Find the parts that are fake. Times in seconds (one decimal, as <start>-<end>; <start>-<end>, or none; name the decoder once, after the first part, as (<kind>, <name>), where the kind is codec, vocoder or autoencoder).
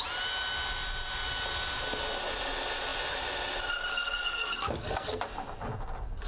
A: 3.9-5.2 (codec, SNAC)